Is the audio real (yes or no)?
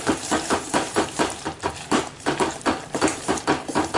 no